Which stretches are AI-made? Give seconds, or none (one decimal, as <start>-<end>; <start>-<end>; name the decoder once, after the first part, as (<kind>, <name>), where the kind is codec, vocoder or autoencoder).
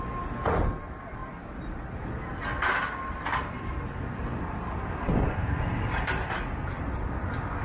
none